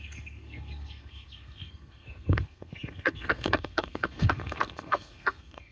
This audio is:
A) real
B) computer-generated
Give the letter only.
B